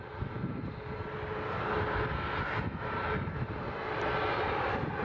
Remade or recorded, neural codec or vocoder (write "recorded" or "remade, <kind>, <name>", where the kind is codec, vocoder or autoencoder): recorded